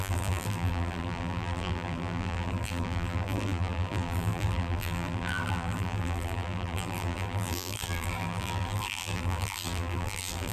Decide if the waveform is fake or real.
fake